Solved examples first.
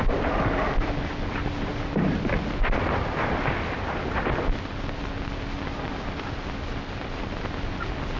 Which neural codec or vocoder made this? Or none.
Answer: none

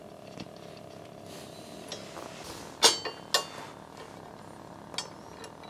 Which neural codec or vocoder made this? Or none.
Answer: none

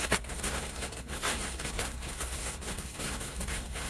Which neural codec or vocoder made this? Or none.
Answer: codec, SNAC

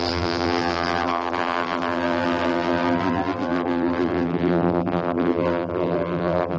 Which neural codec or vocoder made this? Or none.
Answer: vocoder, BigVGAN v2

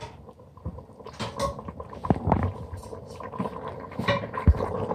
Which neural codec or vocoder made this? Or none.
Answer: none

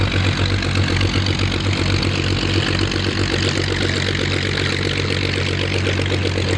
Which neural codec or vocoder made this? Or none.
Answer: none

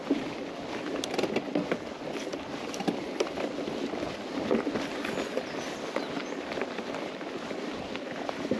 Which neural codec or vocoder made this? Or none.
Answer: none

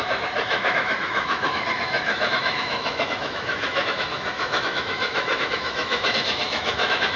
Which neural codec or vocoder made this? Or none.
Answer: autoencoder, DAC-VAE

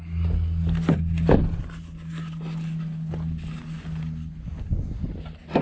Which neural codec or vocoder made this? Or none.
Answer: none